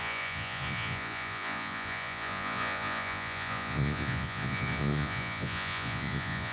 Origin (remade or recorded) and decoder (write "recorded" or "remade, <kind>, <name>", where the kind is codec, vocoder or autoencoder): remade, vocoder, Vocos